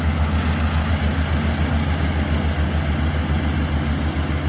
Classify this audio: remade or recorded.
recorded